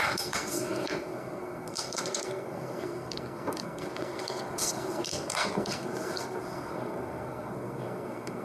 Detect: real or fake fake